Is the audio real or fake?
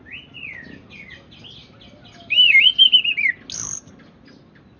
real